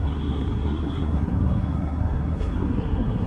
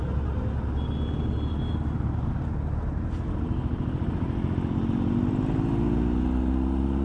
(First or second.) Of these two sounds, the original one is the second